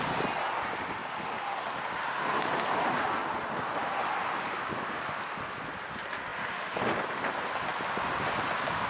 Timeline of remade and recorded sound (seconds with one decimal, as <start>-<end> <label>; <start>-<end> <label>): 0.0-8.9 recorded